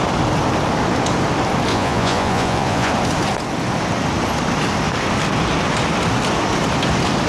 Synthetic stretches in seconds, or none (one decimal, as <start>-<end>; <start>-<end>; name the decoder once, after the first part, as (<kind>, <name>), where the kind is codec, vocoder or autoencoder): 1.7-2.9 (vocoder, Vocos)